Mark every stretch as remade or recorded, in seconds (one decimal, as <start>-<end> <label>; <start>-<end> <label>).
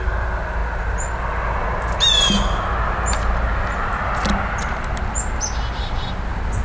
0.0-6.6 recorded